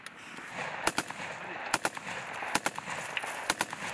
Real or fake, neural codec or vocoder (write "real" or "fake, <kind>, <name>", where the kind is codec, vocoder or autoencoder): real